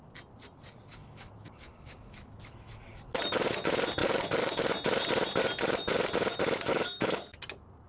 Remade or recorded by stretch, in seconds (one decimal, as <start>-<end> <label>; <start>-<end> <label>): 0.0-1.0 recorded; 1.0-3.2 remade; 3.2-6.7 recorded; 6.7-7.4 remade; 7.4-7.9 recorded